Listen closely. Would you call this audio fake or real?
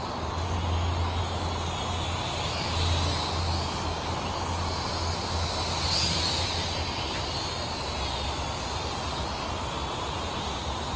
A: real